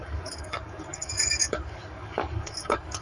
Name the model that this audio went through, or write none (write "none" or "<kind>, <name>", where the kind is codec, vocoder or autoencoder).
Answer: codec, DAC